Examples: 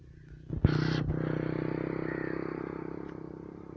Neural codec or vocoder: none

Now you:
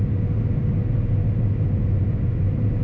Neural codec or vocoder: none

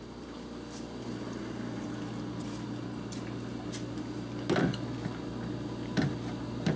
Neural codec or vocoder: none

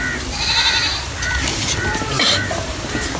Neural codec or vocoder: none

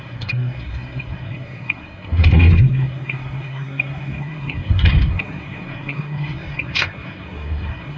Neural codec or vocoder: codec, SNAC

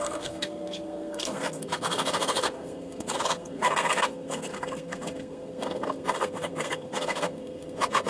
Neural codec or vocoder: codec, SNAC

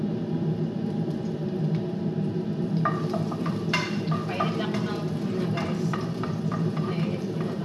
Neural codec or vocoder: vocoder, BigVGAN v2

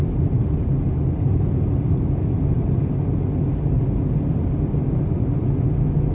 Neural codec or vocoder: none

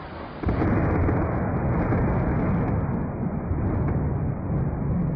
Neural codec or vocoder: none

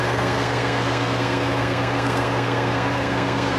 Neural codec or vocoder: codec, SNAC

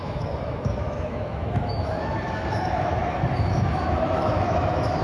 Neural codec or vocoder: autoencoder, DAC-VAE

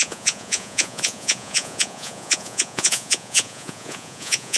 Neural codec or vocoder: vocoder, Vocos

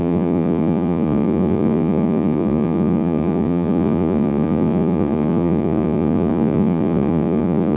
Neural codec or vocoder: vocoder, Vocos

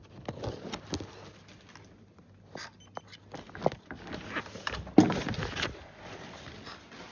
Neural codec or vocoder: none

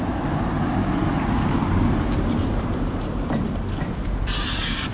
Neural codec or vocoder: vocoder, BigVGAN v2